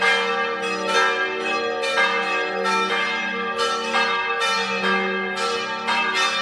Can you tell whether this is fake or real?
real